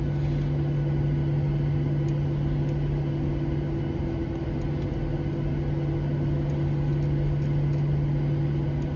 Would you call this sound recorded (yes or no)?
yes